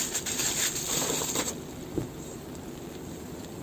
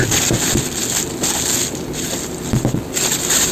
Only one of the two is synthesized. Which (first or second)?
first